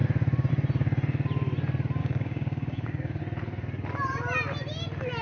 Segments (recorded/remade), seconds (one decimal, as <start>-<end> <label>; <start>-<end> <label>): 0.0-2.0 recorded; 2.0-3.2 remade; 3.2-5.2 recorded